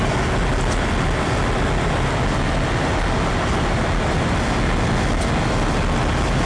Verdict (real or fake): real